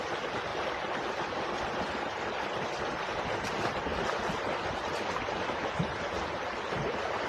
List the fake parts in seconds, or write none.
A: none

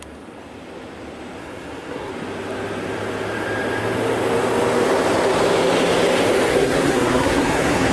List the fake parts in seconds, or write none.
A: 1.4-2.1 (codec, SNAC); 6.5-7.9

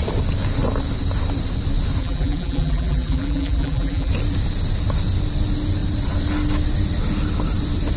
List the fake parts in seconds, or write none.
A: 2.0-4.1 (vocoder, BigVGAN v2)

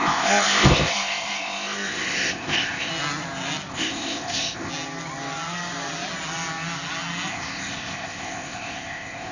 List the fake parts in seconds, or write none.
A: 0.0-2.9 (codec, ZipCodec); 3.7-4.7; 7.3-9.3

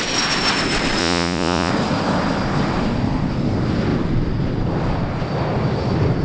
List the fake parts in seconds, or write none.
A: 1.0-1.7 (vocoder, Vocos)

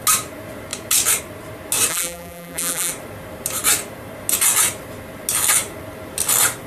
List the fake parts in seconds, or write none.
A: 1.9-2.9 (vocoder, BigVGAN v2)

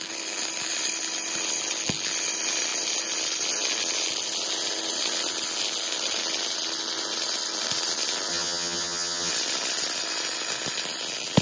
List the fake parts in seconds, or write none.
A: 8.3-9.3 (vocoder, HiFi-GAN)

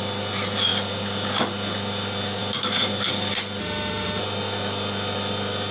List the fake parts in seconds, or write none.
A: 3.6-4.2 (autoencoder, DAC-VAE)